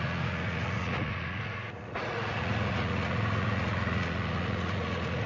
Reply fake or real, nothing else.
fake